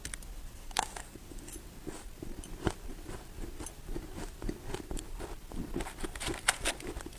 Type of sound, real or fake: real